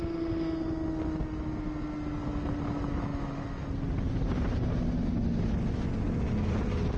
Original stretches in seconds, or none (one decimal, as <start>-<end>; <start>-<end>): 0.0-7.0